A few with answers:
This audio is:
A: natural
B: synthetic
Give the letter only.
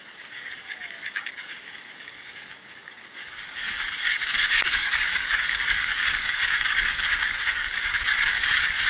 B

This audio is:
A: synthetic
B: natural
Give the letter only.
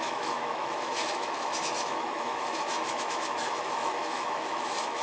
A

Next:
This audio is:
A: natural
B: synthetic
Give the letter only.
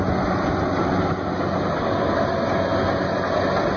A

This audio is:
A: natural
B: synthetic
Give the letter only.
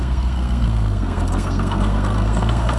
B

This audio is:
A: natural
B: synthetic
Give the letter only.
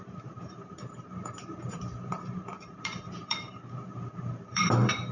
B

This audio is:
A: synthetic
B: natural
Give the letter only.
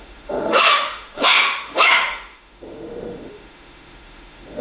A